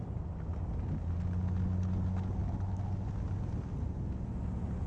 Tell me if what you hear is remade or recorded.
recorded